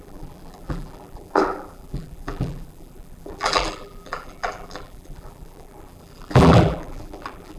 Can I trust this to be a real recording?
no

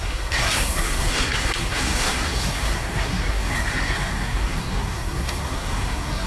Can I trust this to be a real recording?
no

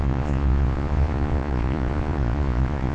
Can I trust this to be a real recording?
no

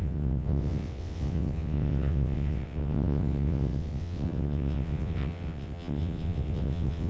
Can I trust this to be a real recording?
no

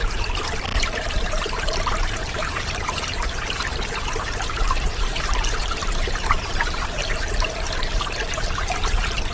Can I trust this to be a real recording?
no